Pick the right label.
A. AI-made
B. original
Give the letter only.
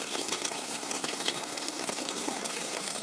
A